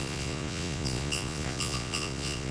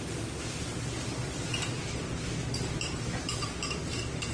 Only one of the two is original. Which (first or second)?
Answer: second